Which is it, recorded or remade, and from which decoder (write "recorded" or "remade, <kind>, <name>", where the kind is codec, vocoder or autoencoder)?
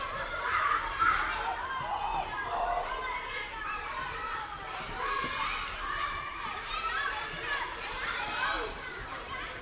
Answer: remade, vocoder, BigVGAN v2